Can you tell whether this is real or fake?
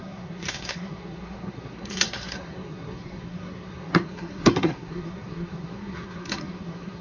fake